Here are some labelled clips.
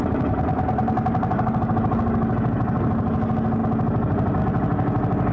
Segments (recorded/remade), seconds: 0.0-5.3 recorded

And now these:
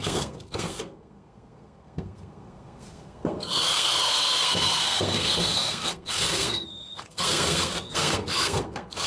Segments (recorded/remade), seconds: 0.0-9.1 remade